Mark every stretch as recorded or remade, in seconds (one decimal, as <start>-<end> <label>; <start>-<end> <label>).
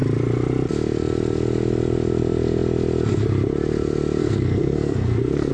0.0-4.2 recorded; 4.2-5.5 remade